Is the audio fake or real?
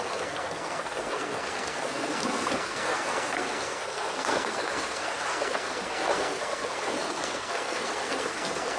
fake